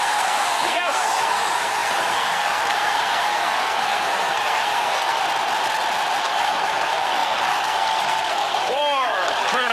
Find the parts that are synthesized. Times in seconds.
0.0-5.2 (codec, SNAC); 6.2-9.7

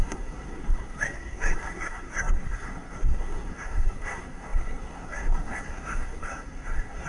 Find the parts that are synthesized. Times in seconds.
0.0-7.1 (codec, SNAC)

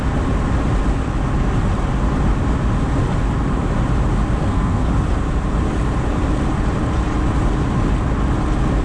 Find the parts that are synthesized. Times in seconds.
4.4-4.9 (codec, SNAC)

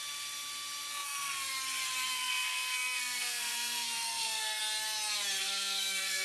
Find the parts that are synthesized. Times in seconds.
0.9-1.5 (codec, SNAC); 2.1-4.6; 5.4-6.2